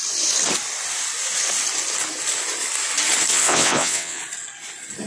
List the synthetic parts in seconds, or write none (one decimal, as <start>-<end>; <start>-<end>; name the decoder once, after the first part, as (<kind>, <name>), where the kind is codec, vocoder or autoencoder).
3.3-4.2 (vocoder, WaveNeXt)